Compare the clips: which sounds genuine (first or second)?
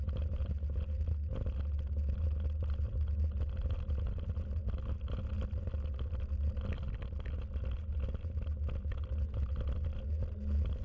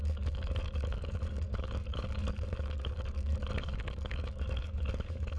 first